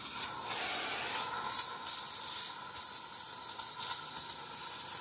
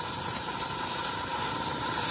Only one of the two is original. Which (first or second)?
first